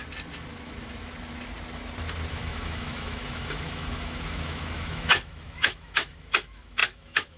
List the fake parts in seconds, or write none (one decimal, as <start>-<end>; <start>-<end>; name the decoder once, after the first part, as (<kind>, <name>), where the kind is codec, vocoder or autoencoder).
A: 2.3-7.4 (autoencoder, DAC-VAE)